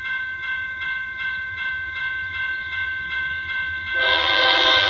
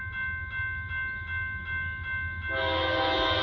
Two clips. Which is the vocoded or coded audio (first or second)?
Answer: first